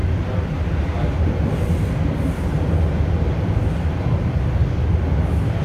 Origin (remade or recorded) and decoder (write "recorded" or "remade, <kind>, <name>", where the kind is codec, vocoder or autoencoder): recorded